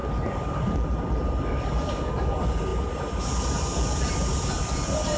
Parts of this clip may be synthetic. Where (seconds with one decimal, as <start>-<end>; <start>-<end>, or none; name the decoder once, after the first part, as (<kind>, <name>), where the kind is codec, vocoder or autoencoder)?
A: none